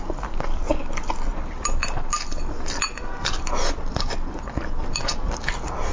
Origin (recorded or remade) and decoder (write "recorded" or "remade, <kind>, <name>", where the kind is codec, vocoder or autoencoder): recorded